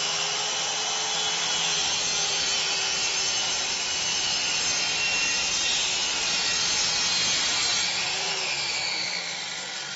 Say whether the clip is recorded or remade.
recorded